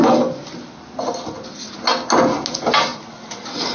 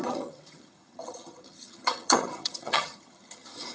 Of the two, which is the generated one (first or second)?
second